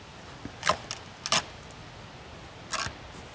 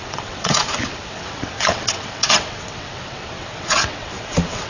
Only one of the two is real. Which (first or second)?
first